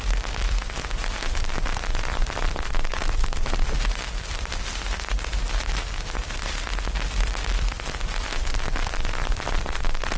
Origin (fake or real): fake